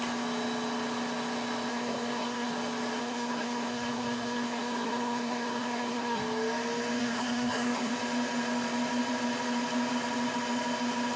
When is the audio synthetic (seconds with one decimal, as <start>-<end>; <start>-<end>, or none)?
1.7-2.5; 3.0-6.2; 7.0-7.9